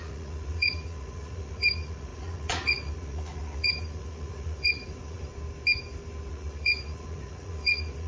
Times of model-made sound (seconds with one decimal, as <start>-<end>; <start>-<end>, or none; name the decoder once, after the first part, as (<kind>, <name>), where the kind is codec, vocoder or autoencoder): 0.0-5.3 (vocoder, Vocos); 6.3-8.1